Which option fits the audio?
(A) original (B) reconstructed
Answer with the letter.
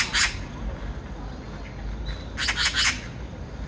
A